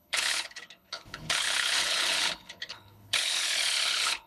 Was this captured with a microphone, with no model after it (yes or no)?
no